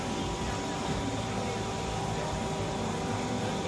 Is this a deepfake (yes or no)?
no